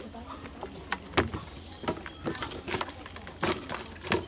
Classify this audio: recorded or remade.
recorded